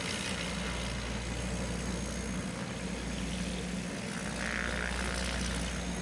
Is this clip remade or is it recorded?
recorded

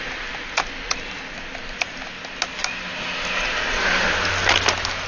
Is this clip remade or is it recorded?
recorded